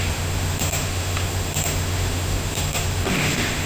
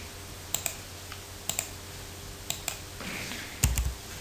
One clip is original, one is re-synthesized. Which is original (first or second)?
second